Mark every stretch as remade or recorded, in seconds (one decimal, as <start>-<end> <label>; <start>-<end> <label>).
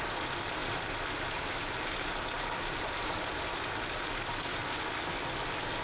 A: 0.0-5.8 recorded